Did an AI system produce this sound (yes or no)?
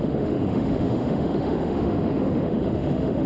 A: yes